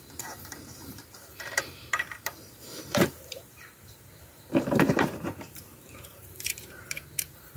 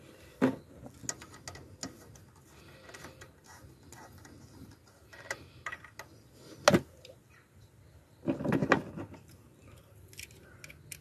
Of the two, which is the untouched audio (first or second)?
second